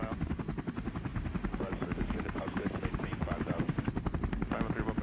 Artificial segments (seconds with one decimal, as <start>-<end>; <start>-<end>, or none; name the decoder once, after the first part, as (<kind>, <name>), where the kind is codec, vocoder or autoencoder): 1.1-4.1 (vocoder, BigVGAN v2)